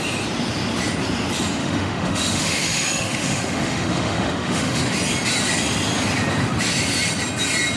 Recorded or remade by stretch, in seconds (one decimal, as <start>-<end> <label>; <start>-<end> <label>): 0.0-1.6 recorded; 1.6-4.8 remade; 4.8-7.8 recorded